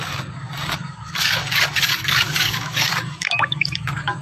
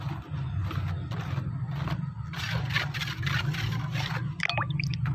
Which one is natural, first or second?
second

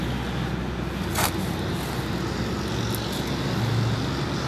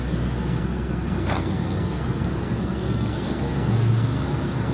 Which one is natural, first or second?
first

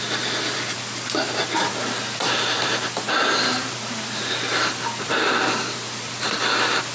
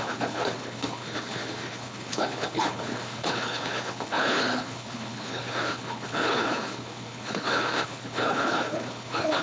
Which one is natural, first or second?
first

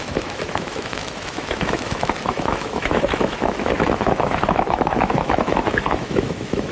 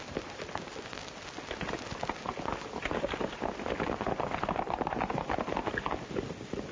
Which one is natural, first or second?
second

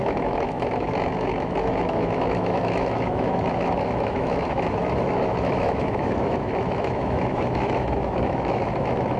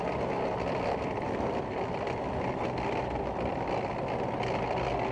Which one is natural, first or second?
second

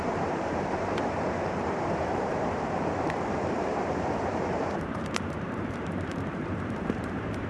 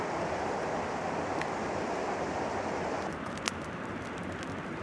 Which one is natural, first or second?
second